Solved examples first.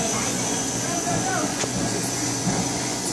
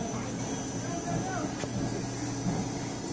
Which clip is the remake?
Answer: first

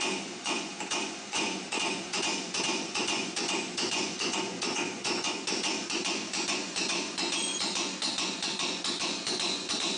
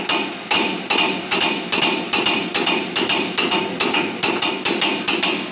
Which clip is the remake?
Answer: first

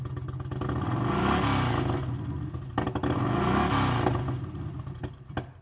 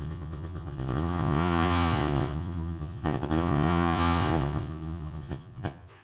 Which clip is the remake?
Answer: second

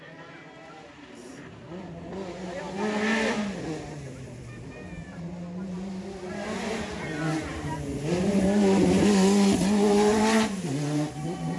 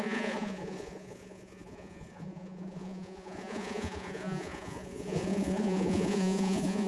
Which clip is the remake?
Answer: second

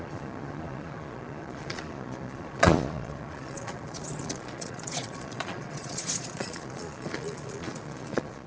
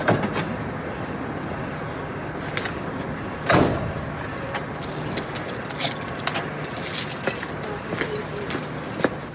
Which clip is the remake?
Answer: first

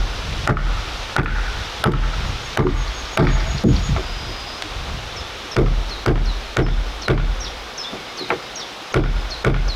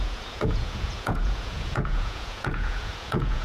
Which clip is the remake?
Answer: second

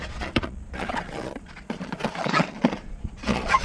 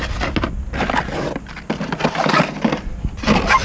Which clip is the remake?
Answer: first